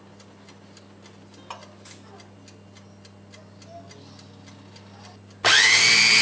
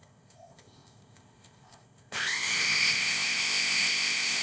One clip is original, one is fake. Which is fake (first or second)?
second